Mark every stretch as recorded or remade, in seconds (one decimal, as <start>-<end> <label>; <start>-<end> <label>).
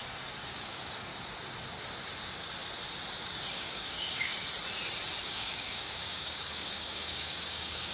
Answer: 0.0-0.5 recorded; 0.5-1.1 remade; 1.1-3.5 recorded; 3.5-4.3 remade; 4.3-5.3 recorded; 5.3-7.9 remade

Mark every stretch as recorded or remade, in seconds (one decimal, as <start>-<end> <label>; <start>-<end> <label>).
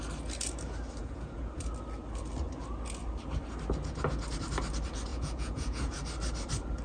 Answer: 0.0-1.0 recorded; 1.0-1.5 remade; 1.5-5.1 recorded; 5.1-5.8 remade; 5.8-6.8 recorded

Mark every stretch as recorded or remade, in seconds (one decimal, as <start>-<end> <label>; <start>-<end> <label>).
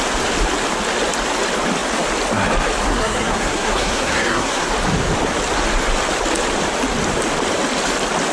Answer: 0.0-2.9 recorded; 2.9-4.7 remade; 4.7-8.3 recorded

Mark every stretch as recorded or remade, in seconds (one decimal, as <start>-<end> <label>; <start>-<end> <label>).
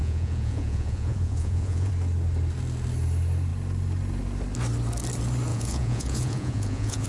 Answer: 0.0-1.9 remade; 1.9-5.5 recorded; 5.5-7.1 remade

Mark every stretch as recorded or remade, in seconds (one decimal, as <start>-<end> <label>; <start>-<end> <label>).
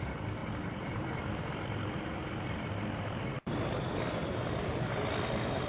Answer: 0.0-5.7 recorded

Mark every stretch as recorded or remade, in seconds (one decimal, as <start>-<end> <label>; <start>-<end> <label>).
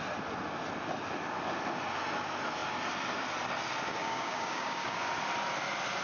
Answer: 0.0-4.0 recorded; 4.0-5.1 remade; 5.1-6.0 recorded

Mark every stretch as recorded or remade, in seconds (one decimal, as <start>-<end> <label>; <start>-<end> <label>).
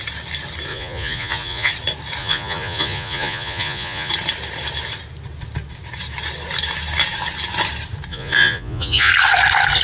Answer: 0.0-0.7 recorded; 0.7-1.7 remade; 1.7-2.2 recorded; 2.2-4.1 remade; 4.1-8.1 recorded; 8.1-9.1 remade; 9.1-9.8 recorded